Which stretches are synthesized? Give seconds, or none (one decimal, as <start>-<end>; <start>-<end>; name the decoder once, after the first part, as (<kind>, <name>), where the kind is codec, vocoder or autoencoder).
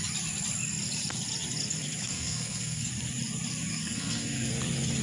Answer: 2.1-2.9 (codec, SNAC); 3.8-4.5